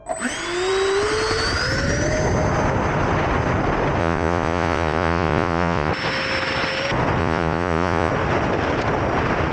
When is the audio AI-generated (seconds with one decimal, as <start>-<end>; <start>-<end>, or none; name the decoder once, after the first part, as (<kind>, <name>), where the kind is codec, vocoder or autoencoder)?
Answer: 4.0-5.9 (vocoder, Vocos); 7.2-8.1